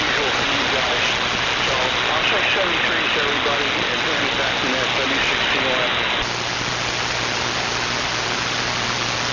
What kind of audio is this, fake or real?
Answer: real